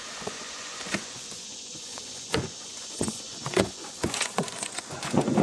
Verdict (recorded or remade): remade